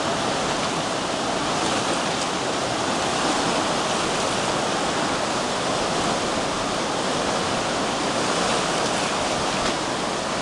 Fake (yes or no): no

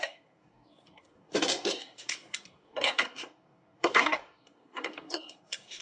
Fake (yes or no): yes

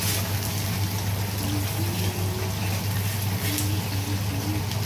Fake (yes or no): no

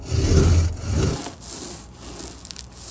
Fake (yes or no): no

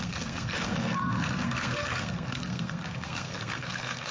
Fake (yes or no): yes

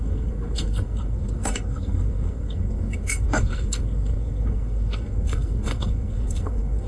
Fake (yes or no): yes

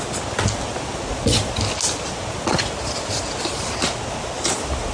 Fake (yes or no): no